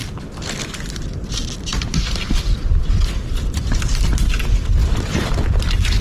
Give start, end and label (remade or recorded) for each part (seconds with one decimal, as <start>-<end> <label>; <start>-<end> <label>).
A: 0.0-3.6 remade; 3.6-4.8 recorded; 4.8-5.5 remade; 5.5-6.0 recorded